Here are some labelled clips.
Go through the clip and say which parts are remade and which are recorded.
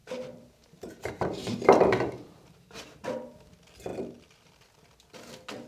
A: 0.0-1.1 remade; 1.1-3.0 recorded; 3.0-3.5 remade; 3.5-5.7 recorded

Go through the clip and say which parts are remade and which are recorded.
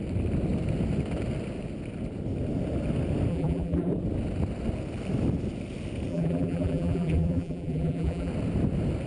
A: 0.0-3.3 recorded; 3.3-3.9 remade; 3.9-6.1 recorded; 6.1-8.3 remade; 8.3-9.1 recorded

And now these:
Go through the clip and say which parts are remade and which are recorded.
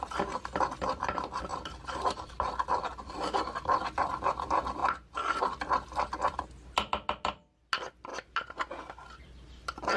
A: 0.0-1.5 recorded; 1.5-3.8 remade; 3.8-10.0 recorded